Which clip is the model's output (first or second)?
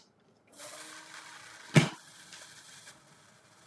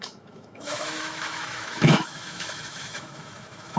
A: second